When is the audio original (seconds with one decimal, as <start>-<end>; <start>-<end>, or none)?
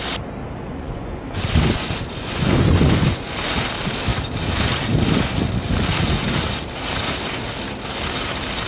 0.0-0.7; 3.3-8.7